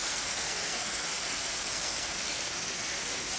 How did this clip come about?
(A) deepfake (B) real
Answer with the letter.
A